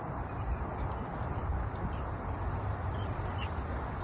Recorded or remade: recorded